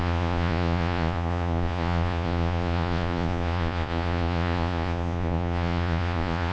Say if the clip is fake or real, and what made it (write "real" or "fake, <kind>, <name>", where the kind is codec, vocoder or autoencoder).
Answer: fake, vocoder, Vocos